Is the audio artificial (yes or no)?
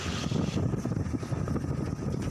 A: no